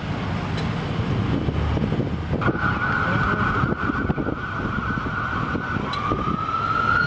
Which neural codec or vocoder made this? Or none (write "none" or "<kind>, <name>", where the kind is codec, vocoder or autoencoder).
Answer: none